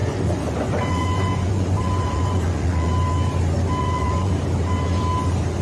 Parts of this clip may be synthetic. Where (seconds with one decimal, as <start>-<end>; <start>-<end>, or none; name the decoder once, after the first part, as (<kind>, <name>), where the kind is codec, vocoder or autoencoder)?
0.0-2.9 (vocoder, Vocos); 3.8-4.3